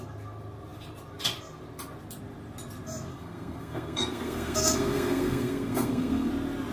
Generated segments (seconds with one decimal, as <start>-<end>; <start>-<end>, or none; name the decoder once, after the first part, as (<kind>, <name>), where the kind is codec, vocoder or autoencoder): 3.1-6.3 (codec, SNAC)